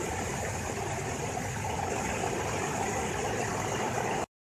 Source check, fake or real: real